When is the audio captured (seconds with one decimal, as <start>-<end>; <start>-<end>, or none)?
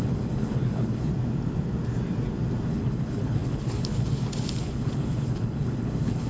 1.1-2.7